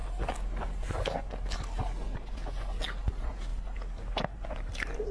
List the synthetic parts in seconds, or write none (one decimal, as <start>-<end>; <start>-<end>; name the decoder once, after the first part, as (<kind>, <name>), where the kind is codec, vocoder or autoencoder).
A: 3.1-3.5 (vocoder, BigVGAN v2); 4.1-5.1